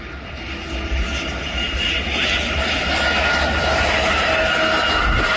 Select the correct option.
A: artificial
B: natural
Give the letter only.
B